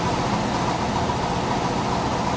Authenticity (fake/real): real